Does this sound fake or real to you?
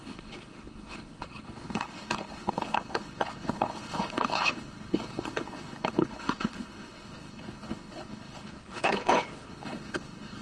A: fake